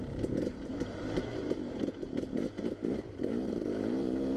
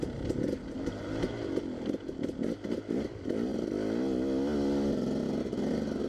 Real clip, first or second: second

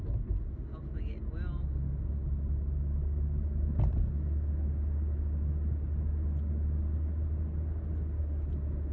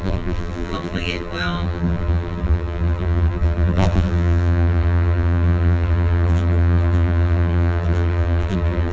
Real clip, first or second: first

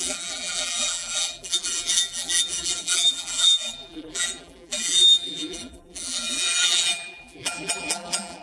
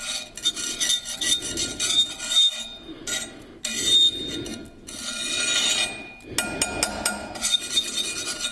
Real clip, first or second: second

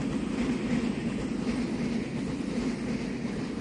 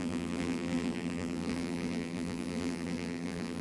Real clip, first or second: first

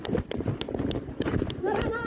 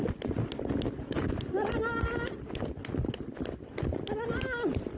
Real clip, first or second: second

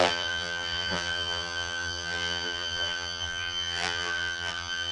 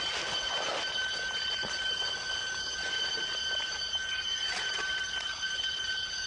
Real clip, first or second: second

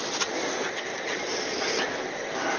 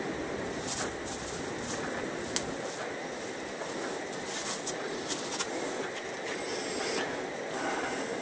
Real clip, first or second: second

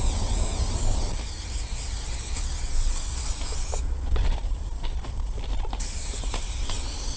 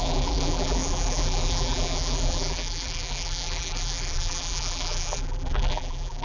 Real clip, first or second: first